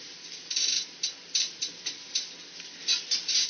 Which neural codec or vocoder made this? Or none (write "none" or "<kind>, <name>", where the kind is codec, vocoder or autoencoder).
none